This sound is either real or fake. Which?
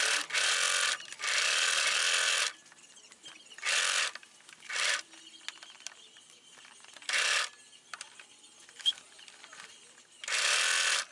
real